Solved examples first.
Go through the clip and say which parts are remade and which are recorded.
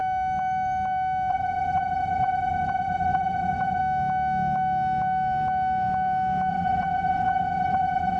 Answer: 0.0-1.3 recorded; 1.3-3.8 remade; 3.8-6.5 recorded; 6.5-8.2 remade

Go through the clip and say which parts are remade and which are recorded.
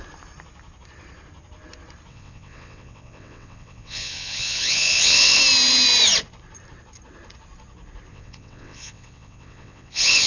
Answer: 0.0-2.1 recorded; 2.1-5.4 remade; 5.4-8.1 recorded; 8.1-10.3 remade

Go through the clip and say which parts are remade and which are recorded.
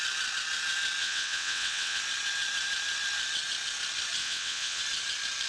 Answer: 0.0-1.0 recorded; 1.0-2.0 remade; 2.0-4.2 recorded; 4.2-4.8 remade; 4.8-5.5 recorded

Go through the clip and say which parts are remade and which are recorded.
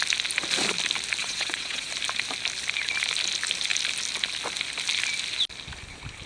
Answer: 0.0-1.2 recorded; 1.2-1.9 remade; 1.9-6.3 recorded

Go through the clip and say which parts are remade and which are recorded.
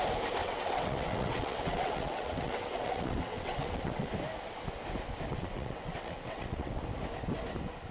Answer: 0.0-0.4 recorded; 0.4-4.1 remade; 4.1-5.3 recorded; 5.3-6.8 remade; 6.8-7.9 recorded